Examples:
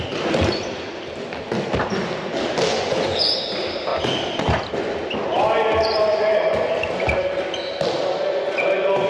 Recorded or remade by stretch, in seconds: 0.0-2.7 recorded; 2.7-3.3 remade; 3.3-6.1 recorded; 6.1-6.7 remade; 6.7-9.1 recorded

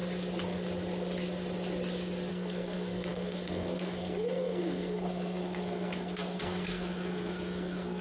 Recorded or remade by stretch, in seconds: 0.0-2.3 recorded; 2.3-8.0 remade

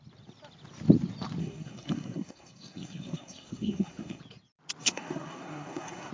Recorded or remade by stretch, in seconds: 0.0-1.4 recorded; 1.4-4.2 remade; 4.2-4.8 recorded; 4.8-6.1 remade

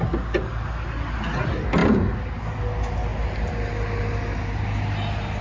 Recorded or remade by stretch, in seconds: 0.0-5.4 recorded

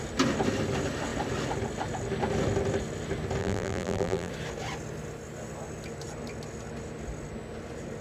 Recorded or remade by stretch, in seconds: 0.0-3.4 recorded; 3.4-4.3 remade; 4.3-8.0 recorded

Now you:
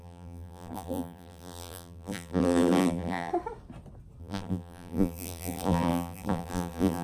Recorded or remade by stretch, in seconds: 0.0-3.3 remade; 3.3-4.2 recorded; 4.2-7.0 remade